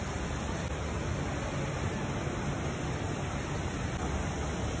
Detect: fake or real real